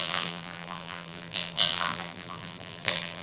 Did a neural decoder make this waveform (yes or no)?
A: yes